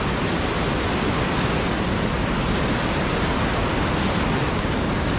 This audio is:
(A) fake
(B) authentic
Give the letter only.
B